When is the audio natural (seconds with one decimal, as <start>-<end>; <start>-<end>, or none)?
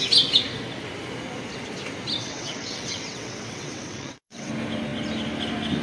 0.0-2.2; 4.5-5.8